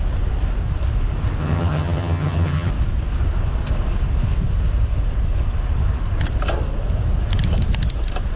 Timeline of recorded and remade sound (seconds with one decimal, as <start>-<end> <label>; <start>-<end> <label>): 0.0-1.4 recorded; 1.4-2.7 remade; 2.7-8.4 recorded